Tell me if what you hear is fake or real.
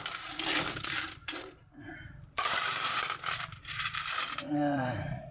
fake